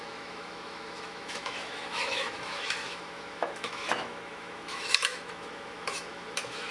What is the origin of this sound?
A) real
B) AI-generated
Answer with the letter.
B